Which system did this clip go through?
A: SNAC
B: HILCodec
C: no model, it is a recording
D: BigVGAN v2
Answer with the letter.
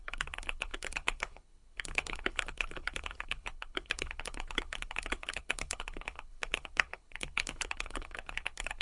B